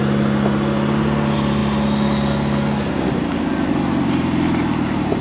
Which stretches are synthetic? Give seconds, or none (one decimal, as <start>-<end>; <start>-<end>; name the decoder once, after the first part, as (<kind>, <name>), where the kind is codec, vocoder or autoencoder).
none